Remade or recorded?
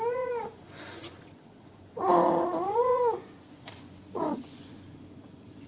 remade